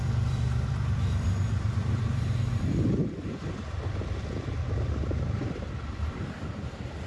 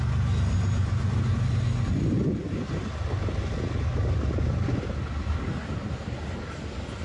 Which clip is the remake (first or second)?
first